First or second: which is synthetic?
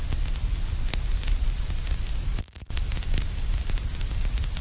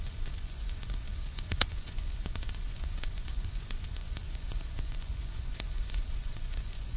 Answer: second